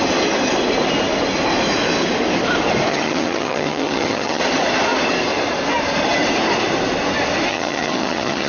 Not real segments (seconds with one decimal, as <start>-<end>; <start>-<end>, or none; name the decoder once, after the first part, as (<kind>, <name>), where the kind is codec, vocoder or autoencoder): 2.9-4.4 (vocoder, HiFi-GAN); 7.5-8.5